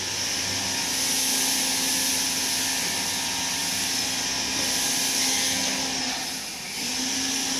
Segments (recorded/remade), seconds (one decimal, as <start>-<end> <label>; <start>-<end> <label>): 0.0-5.3 recorded; 5.3-5.8 remade; 5.8-7.6 recorded